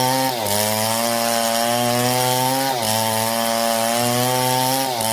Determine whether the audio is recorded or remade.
recorded